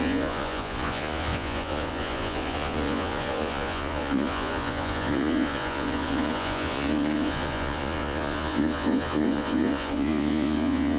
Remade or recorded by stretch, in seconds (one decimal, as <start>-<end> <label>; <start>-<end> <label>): 0.0-11.0 remade